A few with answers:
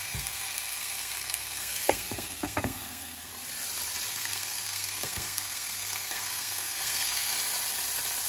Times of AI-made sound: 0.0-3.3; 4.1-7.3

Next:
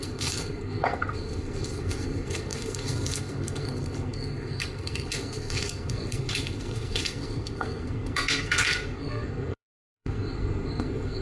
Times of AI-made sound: 0.0-11.2

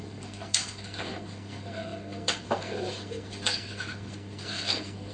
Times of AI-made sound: 0.0-5.1